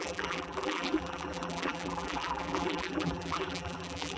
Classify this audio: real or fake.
fake